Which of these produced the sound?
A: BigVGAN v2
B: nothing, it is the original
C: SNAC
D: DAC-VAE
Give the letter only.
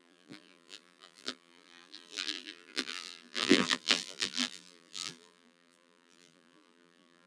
A